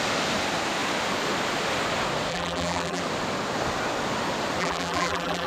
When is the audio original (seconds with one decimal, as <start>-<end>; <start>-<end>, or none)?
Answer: 0.0-2.3; 3.0-4.6